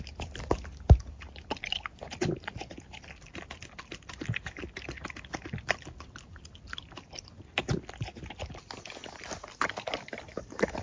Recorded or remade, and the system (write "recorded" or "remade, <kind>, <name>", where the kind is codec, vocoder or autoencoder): recorded